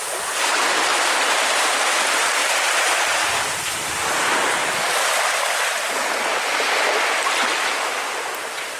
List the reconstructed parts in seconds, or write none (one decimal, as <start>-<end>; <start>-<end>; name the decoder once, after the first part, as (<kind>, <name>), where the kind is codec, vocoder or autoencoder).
0.9-1.9 (vocoder, BigVGAN v2)